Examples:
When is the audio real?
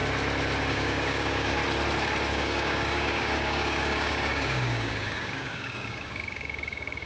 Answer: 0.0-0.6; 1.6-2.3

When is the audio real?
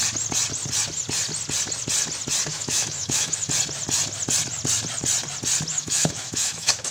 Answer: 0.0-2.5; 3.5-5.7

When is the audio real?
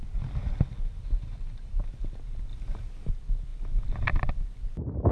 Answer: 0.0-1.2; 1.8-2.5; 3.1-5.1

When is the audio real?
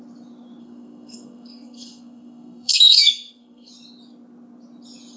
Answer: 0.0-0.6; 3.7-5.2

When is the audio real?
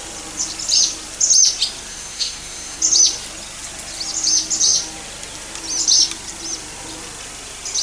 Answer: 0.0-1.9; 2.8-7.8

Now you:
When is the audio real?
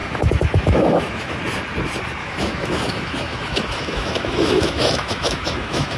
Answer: 1.4-2.2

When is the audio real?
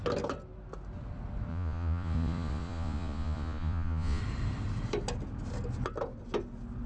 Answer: 0.0-1.5; 4.2-6.9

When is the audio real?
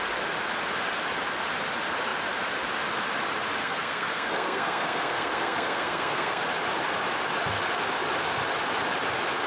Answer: 0.0-3.6; 6.4-9.5